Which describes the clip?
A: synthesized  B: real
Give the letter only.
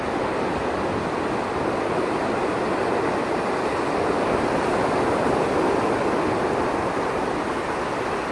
B